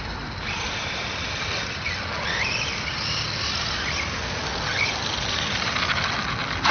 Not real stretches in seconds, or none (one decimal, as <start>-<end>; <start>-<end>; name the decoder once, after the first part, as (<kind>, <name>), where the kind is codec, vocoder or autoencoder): none